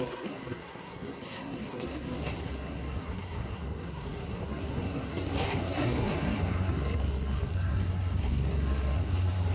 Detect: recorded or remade remade